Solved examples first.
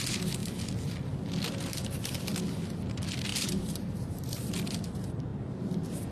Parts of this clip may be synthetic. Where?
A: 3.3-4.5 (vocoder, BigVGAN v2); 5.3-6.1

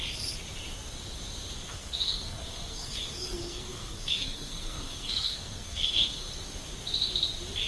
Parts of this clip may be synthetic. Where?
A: 1.7-6.3 (codec, SNAC)

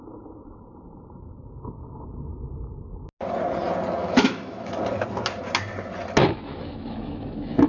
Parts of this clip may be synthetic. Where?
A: 4.0-4.7 (autoencoder, DAC-VAE); 6.2-7.7

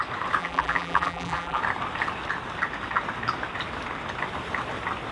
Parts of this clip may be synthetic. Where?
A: 0.4-1.6 (vocoder, BigVGAN v2)

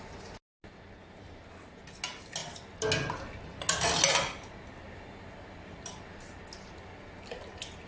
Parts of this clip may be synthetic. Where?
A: none

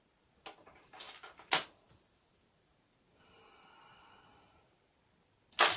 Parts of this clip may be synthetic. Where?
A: none

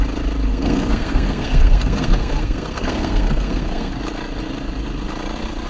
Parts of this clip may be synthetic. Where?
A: 0.5-3.9 (codec, SNAC)

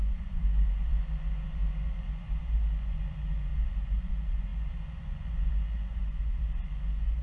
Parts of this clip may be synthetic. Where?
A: 0.0-7.2 (vocoder, Vocos)